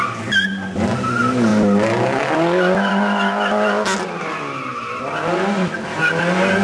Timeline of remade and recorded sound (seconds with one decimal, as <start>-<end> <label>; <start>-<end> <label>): 0.0-6.6 recorded